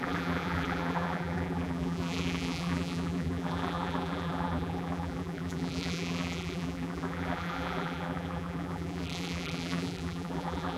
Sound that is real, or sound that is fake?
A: fake